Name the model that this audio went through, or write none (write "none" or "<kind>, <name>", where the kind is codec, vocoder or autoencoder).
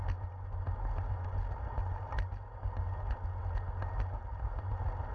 none